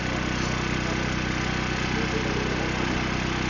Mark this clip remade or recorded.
recorded